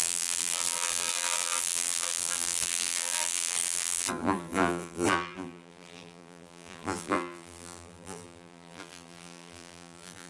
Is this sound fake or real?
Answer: fake